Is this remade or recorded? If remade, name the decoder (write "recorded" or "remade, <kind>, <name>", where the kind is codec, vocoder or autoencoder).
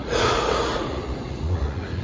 remade, vocoder, Vocos